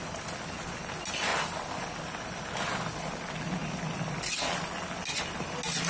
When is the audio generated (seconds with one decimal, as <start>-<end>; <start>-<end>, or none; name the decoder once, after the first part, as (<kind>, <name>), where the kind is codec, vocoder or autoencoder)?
none